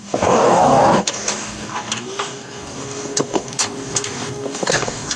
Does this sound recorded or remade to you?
remade